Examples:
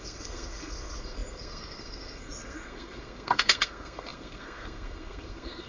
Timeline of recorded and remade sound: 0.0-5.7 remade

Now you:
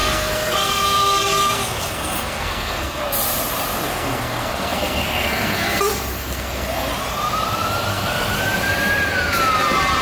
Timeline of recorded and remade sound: 0.0-3.0 remade; 3.0-3.9 recorded; 3.9-6.9 remade; 6.9-7.9 recorded; 7.9-8.4 remade; 8.4-10.0 recorded

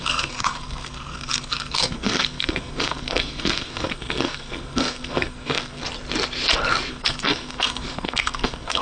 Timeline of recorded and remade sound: 0.0-5.8 remade; 5.8-6.9 recorded; 6.9-8.8 remade

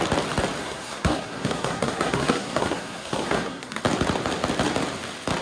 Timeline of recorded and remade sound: 0.0-0.6 recorded; 0.6-3.8 remade; 3.8-5.4 recorded

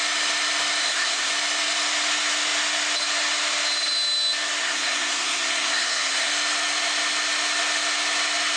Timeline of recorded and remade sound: 0.0-0.8 recorded; 0.8-1.3 remade; 1.3-4.6 recorded; 4.6-6.3 remade; 6.3-8.6 recorded

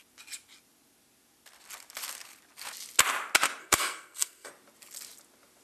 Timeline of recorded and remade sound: 0.0-3.6 recorded; 3.6-4.5 remade; 4.5-5.6 recorded

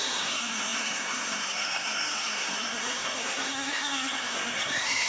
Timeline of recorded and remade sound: 0.0-5.1 remade